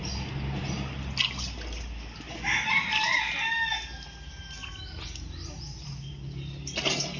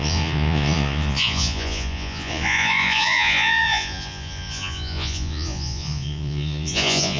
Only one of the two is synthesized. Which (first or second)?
second